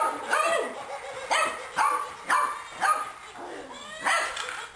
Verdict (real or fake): real